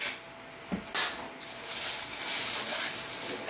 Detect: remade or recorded recorded